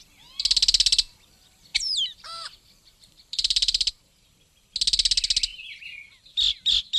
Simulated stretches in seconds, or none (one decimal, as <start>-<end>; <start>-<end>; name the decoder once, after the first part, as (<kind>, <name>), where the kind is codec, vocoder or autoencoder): 1.7-3.9 (vocoder, BigVGAN v2); 5.5-7.0